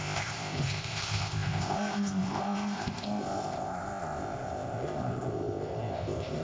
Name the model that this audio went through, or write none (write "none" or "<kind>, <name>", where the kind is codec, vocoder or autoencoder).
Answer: codec, ZipCodec